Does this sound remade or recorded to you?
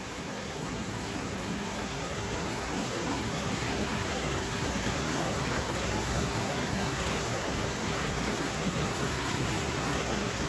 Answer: remade